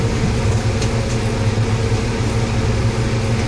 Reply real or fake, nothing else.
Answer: real